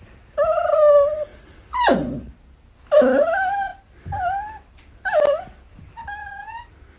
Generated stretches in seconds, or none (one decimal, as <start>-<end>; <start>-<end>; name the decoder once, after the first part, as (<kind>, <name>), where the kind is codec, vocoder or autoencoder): none